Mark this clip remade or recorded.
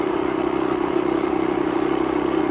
remade